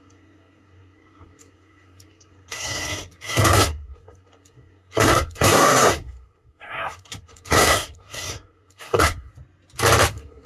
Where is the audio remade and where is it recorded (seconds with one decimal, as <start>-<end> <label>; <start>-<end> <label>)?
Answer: 0.0-9.3 remade; 9.3-10.1 recorded; 10.1-10.5 remade